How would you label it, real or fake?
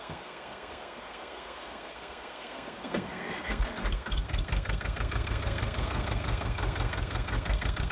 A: fake